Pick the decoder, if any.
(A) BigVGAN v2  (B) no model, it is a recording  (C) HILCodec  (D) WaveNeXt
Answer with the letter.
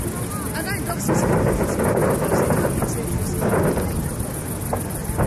B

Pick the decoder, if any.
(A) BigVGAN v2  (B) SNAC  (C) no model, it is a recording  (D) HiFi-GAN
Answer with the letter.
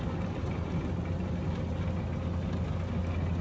C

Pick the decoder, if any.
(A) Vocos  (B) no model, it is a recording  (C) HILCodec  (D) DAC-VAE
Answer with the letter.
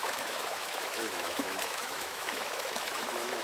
D